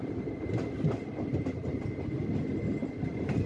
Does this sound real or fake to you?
real